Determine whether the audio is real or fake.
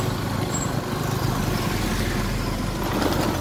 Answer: real